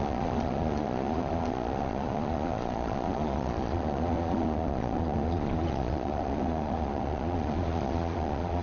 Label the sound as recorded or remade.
remade